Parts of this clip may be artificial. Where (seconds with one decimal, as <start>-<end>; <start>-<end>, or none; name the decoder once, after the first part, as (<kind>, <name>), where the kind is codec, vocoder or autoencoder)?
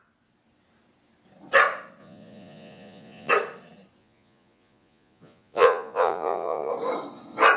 2.0-3.3 (vocoder, Vocos); 4.0-6.7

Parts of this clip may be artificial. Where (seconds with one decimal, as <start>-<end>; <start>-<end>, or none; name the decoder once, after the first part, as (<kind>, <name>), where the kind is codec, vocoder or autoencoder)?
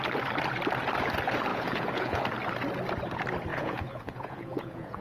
1.5-2.2 (vocoder, Vocos); 3.5-5.0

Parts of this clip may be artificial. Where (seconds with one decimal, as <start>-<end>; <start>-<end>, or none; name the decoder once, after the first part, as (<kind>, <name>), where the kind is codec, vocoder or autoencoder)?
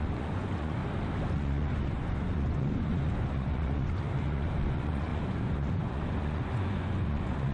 0.0-0.8 (vocoder, Vocos); 1.3-7.5